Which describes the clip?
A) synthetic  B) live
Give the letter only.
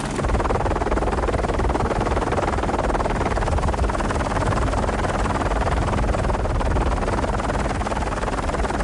B